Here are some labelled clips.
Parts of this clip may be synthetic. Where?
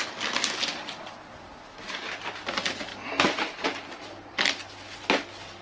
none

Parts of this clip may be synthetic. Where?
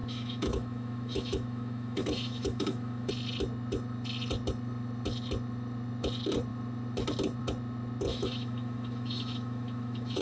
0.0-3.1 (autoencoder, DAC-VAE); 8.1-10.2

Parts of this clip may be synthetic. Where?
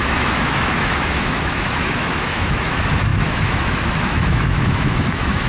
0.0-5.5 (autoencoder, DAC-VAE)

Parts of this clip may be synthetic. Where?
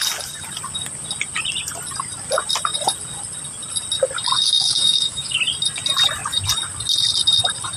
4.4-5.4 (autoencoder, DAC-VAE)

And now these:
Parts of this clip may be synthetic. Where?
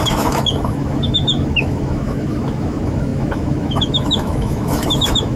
0.0-5.4 (autoencoder, DAC-VAE)